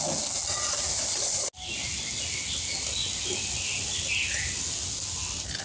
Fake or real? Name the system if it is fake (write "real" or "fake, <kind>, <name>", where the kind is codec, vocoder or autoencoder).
real